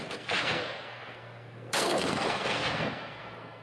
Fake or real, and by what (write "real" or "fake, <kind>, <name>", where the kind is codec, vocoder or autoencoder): fake, codec, SNAC